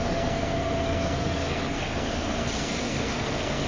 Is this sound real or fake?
fake